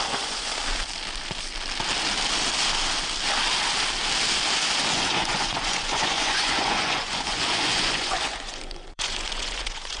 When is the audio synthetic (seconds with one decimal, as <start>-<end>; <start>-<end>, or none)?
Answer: 0.0-0.5; 4.9-10.0